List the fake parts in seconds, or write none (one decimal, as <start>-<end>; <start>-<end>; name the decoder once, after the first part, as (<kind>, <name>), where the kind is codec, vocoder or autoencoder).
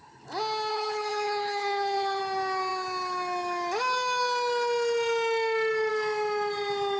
0.7-2.2 (codec, HILCodec)